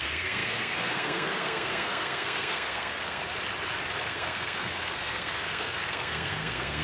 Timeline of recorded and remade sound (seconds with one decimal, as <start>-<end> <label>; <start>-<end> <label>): 0.0-3.2 remade; 3.2-4.0 recorded; 4.0-6.8 remade